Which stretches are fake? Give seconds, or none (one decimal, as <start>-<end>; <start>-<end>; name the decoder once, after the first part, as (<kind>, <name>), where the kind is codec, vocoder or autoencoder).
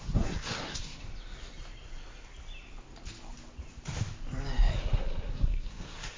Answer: 0.0-1.1 (codec, SNAC); 4.8-6.2